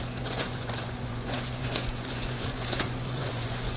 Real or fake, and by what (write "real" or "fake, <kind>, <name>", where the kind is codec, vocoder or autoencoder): fake, vocoder, Vocos